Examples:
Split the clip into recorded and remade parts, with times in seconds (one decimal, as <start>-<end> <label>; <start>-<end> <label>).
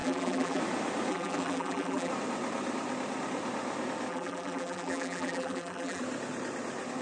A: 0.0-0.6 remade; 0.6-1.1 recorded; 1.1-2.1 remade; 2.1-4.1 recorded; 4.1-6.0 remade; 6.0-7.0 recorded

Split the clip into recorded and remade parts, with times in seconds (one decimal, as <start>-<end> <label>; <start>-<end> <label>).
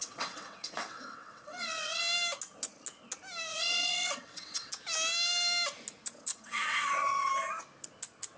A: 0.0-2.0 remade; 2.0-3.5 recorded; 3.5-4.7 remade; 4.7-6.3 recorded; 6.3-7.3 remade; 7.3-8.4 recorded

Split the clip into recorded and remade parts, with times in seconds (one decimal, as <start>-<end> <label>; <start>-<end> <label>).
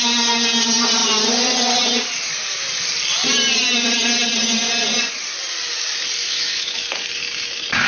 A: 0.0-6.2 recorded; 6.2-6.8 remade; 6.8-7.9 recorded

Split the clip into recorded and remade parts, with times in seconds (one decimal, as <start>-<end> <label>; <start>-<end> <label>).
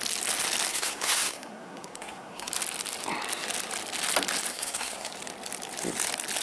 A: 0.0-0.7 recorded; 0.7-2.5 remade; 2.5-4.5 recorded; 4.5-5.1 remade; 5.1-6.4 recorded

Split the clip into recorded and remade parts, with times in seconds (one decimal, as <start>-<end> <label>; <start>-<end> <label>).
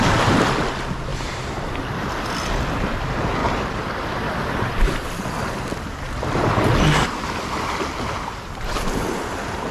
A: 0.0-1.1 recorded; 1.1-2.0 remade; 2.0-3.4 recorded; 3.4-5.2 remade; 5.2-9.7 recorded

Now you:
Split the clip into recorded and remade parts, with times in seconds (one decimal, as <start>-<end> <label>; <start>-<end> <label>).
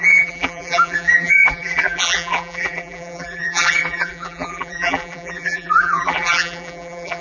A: 0.0-7.2 remade